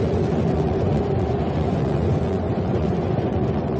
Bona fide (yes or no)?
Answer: no